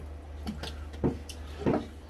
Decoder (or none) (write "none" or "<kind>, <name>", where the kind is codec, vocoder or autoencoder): none